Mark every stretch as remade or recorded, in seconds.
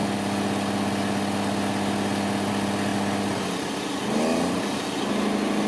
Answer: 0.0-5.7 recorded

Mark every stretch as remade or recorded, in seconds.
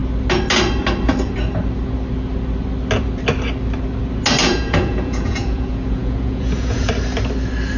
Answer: 0.0-4.4 recorded; 4.4-6.9 remade; 6.9-7.8 recorded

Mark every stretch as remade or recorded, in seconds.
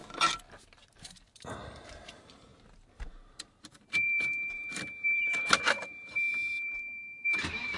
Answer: 0.0-0.9 recorded; 0.9-7.8 remade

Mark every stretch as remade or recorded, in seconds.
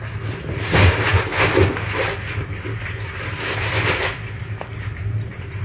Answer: 0.0-5.6 recorded